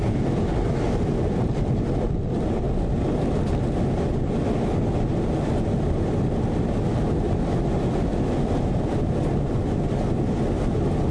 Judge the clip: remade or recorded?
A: recorded